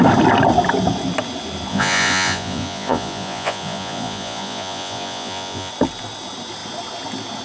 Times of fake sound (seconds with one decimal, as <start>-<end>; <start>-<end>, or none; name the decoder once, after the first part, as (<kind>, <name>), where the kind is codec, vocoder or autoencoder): 1.7-5.7 (vocoder, Vocos)